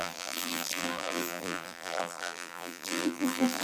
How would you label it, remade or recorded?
remade